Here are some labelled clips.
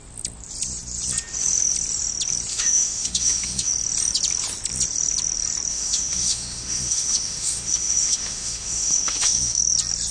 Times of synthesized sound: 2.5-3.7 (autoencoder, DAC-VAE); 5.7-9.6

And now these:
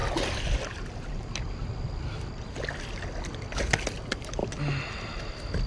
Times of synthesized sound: none

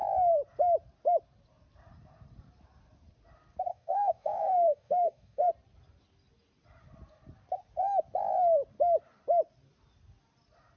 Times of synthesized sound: 3.7-5.5 (codec, DAC)

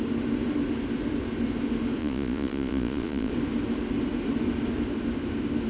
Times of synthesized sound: 2.0-3.3 (vocoder, Vocos)

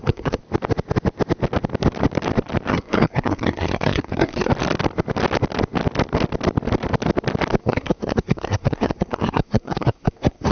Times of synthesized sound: 0.0-0.4 (codec, SNAC); 2.7-4.5; 7.6-10.5

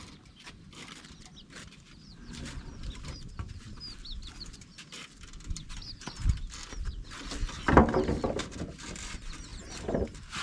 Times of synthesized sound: 0.0-7.8 (vocoder, BigVGAN v2); 8.4-10.4

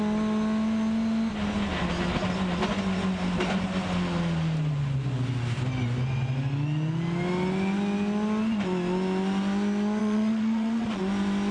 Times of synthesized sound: 10.0-11.0 (vocoder, Vocos)